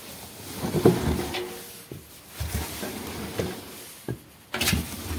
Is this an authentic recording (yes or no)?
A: no